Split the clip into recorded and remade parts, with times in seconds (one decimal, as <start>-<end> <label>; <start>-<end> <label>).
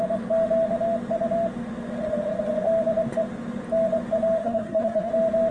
0.0-4.4 recorded; 4.4-5.1 remade; 5.1-5.5 recorded